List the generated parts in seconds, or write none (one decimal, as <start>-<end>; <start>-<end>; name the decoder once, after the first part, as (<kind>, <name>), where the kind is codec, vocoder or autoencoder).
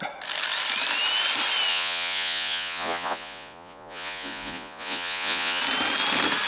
1.7-5.6 (vocoder, Vocos)